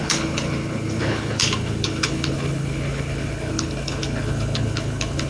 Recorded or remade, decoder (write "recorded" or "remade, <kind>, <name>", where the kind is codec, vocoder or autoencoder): remade, codec, HILCodec